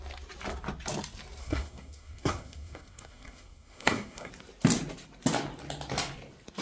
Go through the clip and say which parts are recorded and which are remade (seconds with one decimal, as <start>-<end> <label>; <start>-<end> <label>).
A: 0.0-1.4 recorded; 1.4-4.3 remade; 4.3-6.6 recorded